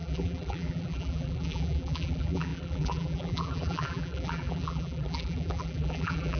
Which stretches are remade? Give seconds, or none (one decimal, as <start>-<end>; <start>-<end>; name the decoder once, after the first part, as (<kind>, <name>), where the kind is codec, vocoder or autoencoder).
0.0-6.4 (vocoder, BigVGAN v2)